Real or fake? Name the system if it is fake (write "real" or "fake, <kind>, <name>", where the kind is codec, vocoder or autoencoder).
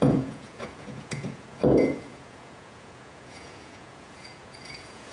fake, vocoder, Vocos